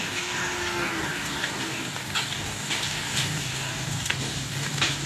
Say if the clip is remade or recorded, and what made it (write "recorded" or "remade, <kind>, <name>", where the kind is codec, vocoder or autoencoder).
remade, codec, DAC